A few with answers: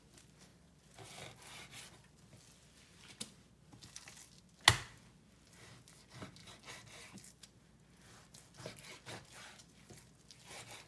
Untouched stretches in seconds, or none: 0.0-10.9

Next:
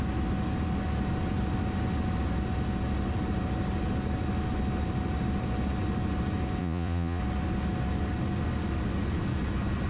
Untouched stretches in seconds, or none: 0.0-6.6; 7.2-9.9

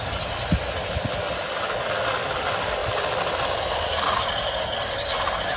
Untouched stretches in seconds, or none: 0.0-5.6